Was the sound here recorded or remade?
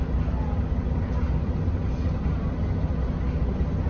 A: recorded